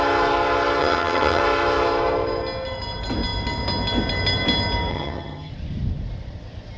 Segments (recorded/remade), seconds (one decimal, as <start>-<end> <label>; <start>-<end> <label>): 0.0-0.8 recorded; 0.8-1.4 remade; 1.4-4.9 recorded; 4.9-5.5 remade; 5.5-6.8 recorded